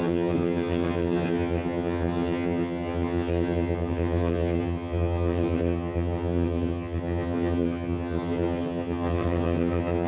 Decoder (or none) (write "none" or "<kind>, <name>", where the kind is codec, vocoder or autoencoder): vocoder, HiFi-GAN